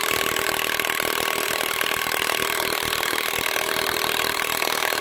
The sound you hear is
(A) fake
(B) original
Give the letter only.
A